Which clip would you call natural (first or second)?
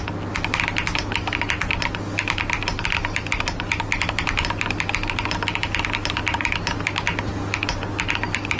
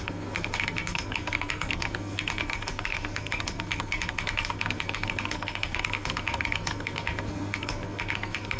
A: first